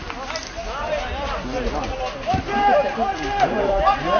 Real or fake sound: real